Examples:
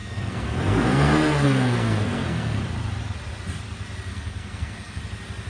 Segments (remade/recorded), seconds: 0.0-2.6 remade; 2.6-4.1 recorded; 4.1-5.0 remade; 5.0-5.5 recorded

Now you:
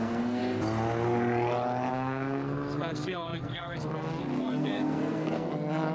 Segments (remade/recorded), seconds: 0.0-0.4 remade; 0.4-1.9 recorded; 1.9-5.9 remade

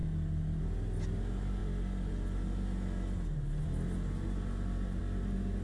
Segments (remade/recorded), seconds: 0.0-5.6 recorded